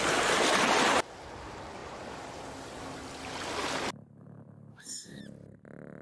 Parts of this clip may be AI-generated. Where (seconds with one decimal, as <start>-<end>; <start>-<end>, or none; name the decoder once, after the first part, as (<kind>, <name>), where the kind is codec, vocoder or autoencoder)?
4.7-5.2 (codec, DAC)